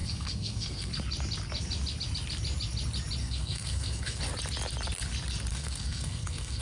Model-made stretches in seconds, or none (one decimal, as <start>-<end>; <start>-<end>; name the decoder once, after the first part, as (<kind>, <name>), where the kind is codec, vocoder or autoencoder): 0.0-0.9 (codec, SNAC); 3.2-4.2; 5.5-6.6